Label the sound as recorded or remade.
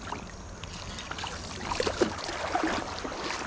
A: recorded